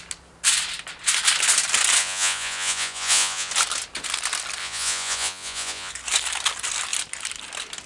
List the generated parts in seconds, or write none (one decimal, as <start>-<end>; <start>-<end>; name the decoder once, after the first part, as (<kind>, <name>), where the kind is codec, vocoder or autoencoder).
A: 2.0-3.5 (vocoder, Vocos); 4.6-5.9